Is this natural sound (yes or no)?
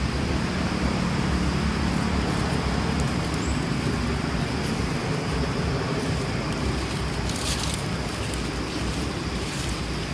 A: yes